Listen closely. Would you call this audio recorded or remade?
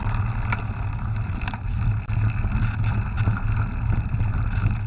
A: recorded